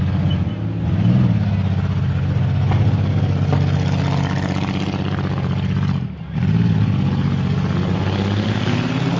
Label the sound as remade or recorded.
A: recorded